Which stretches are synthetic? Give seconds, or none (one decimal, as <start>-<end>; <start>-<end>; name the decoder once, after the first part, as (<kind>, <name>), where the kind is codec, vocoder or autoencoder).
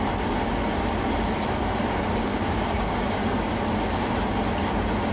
2.3-3.5 (codec, DAC)